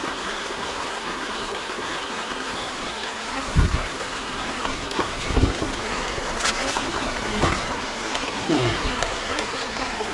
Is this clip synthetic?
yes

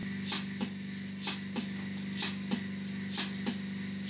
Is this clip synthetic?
no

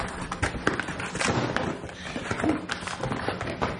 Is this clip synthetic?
no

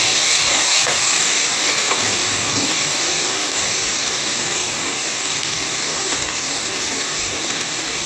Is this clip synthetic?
yes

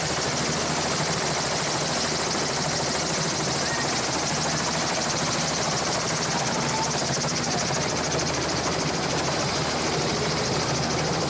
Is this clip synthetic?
yes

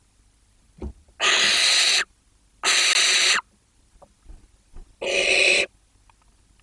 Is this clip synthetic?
no